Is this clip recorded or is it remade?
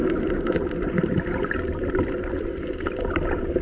recorded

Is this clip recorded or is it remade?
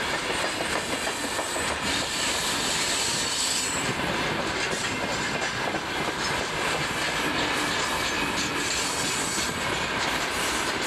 recorded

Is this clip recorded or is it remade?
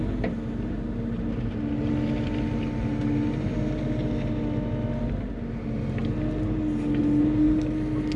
recorded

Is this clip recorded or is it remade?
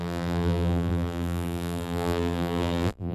remade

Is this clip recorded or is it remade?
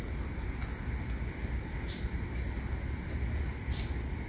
recorded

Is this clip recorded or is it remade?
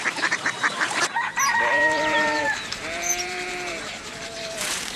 remade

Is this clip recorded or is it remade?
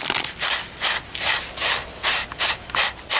recorded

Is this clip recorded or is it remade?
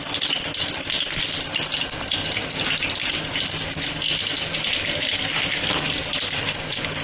recorded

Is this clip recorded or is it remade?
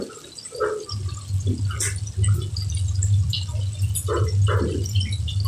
recorded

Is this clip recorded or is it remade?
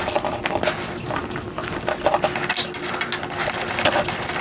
recorded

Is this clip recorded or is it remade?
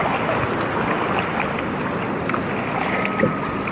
recorded